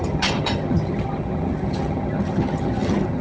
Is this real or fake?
fake